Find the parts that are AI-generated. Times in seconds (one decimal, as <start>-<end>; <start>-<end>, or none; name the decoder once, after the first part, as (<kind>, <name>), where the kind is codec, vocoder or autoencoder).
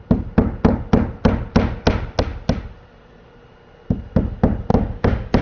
4.7-5.4 (codec, DAC)